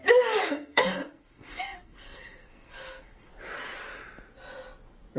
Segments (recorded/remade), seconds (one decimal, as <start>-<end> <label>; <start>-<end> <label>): 0.0-0.4 recorded; 0.4-3.3 remade; 3.3-5.2 recorded